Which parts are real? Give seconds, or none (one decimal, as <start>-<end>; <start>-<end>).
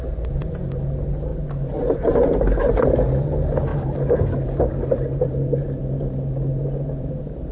0.0-3.7